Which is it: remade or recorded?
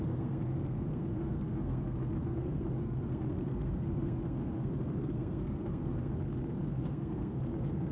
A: remade